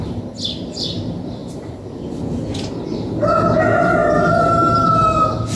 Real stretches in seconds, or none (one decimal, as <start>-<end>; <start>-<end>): 0.0-1.4; 2.2-5.6